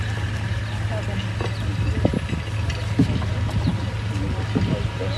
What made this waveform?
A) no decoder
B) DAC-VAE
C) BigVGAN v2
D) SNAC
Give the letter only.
A